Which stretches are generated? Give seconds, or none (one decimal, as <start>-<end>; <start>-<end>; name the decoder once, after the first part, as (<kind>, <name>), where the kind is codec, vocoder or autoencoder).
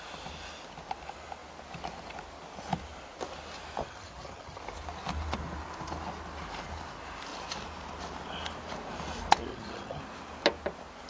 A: 3.8-4.6 (vocoder, HiFi-GAN); 9.5-10.0